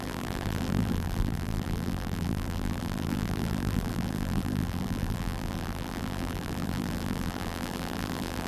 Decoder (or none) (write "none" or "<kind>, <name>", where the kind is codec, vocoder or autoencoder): vocoder, BigVGAN v2